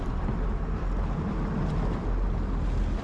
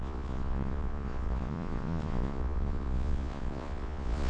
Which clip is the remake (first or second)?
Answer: second